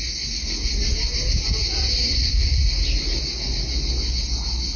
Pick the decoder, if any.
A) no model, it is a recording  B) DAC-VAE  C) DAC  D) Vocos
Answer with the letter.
A